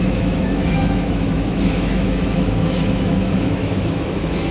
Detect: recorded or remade remade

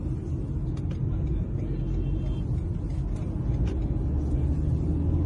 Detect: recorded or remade recorded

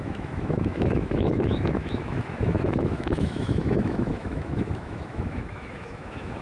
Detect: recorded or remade remade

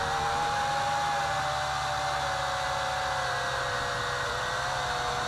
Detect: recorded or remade recorded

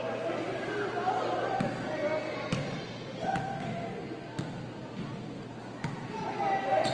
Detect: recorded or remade recorded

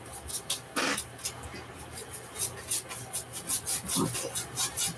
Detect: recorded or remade recorded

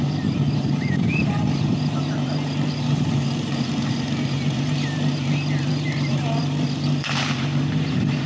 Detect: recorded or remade remade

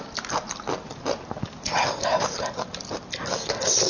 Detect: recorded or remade recorded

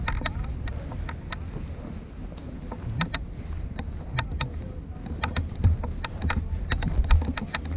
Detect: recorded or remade recorded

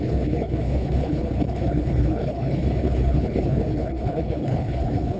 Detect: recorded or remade remade